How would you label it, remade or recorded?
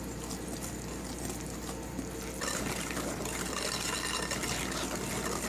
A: recorded